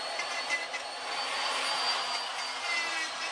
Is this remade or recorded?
recorded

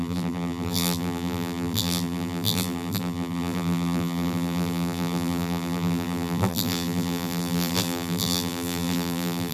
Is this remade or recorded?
remade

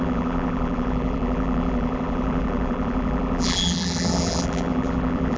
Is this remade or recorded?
remade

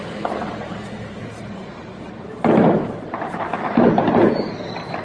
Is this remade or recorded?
recorded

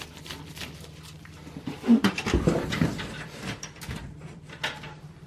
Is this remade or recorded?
remade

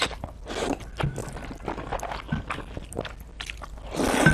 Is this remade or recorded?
recorded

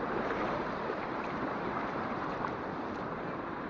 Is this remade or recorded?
remade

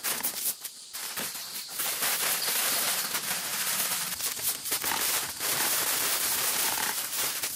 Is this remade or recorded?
remade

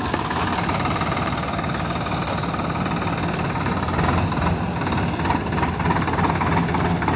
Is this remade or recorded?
recorded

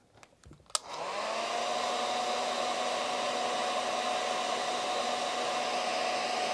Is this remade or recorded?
recorded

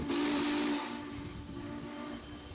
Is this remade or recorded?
recorded